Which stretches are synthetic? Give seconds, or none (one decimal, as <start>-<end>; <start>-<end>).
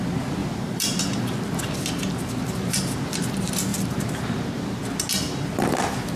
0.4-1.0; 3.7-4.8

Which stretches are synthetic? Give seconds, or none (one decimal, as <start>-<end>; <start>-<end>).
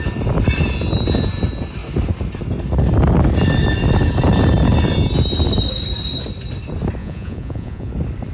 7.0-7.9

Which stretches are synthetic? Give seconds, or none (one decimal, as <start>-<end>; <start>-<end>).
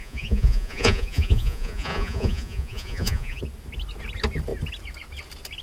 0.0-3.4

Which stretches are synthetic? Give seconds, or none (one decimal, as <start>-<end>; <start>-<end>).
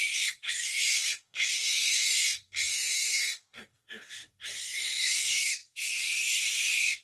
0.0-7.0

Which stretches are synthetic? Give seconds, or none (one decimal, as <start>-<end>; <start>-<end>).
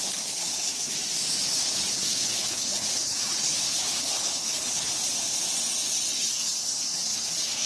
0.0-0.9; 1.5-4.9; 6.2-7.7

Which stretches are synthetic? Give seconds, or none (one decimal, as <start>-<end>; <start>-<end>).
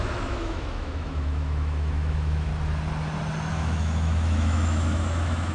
0.0-2.5; 3.5-5.5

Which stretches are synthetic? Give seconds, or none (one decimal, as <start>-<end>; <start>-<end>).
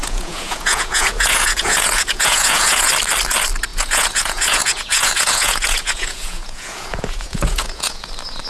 0.0-2.9; 3.7-8.1